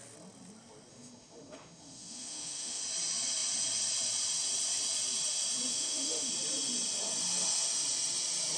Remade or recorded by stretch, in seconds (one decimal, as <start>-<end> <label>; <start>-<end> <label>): 0.0-0.9 recorded; 0.9-2.8 remade; 2.8-5.7 recorded; 5.7-6.3 remade; 6.3-8.6 recorded